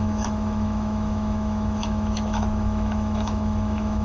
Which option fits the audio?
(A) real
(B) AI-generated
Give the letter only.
B